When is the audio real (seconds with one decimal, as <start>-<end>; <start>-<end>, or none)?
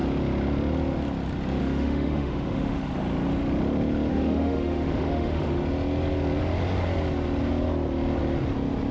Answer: 0.0-1.6; 2.9-4.1; 5.6-8.9